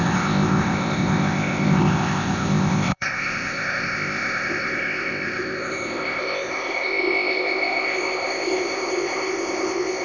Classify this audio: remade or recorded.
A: remade